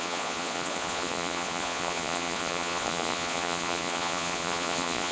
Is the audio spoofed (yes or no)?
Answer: yes